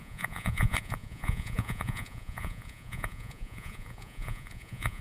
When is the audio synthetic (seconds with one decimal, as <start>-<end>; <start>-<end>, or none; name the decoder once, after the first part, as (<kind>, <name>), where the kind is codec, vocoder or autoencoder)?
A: 0.0-5.0 (vocoder, Vocos)